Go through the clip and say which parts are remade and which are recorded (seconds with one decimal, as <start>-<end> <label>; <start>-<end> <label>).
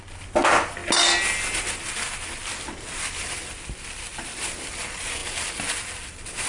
0.0-6.5 recorded